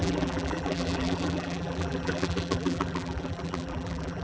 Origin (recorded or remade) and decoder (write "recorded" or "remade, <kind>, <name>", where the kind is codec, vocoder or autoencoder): remade, vocoder, BigVGAN v2